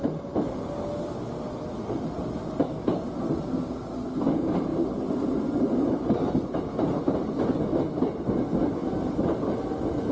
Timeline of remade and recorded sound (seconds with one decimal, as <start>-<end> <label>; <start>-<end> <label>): 0.0-10.1 recorded